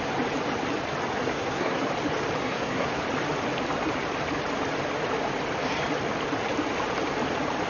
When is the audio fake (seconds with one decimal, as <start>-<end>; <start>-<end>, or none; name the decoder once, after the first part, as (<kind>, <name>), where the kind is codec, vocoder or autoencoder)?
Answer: 1.3-1.8 (codec, SNAC); 2.4-3.0